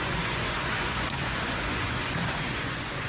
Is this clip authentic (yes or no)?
no